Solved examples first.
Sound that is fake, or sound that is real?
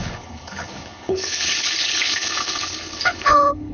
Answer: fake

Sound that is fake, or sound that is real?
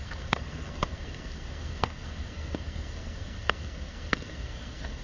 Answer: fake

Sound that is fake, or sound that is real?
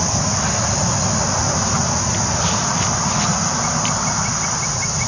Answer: real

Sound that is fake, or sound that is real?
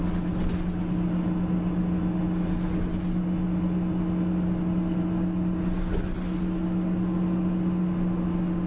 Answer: real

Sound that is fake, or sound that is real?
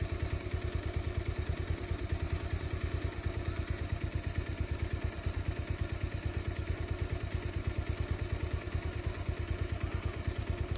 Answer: real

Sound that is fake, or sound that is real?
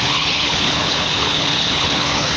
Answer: fake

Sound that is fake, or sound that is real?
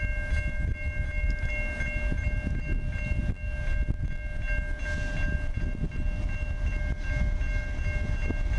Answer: real